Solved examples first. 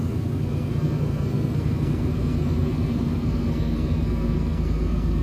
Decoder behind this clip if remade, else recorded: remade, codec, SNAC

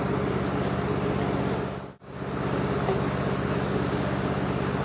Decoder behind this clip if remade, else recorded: recorded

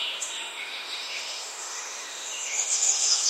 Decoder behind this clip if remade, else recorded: remade, autoencoder, DAC-VAE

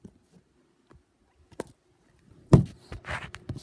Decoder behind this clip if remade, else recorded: recorded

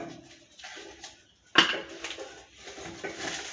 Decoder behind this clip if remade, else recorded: recorded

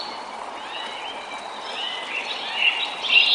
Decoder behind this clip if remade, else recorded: recorded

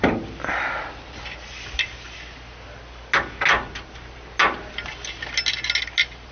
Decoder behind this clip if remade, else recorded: recorded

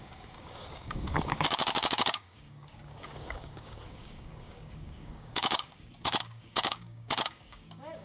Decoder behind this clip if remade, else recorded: remade, codec, DAC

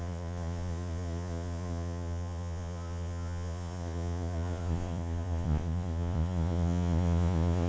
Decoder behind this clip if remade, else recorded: remade, vocoder, Vocos